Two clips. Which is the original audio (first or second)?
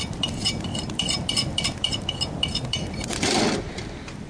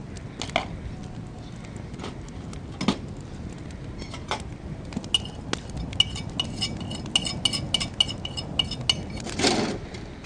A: second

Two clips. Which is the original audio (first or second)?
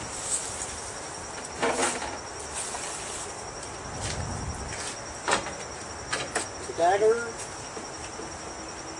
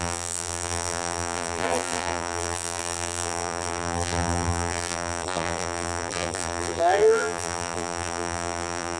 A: first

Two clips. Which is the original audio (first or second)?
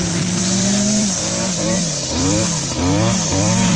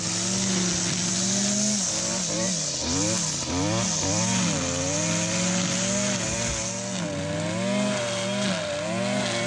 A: second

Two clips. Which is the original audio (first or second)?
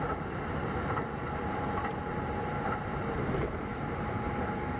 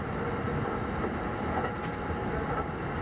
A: second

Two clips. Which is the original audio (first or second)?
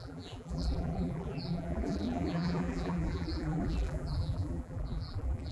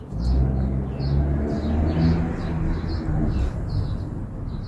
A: second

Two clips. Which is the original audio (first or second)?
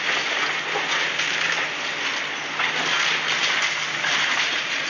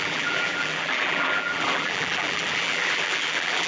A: first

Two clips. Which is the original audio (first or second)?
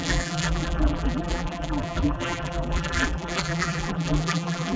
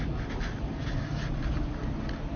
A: second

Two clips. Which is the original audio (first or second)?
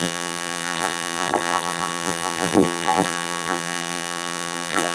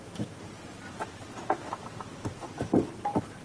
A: second